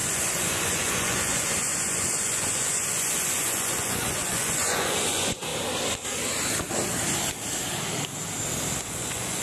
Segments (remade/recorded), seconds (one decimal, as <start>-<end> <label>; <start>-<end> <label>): 0.0-5.5 remade; 5.5-8.9 recorded; 8.9-9.4 remade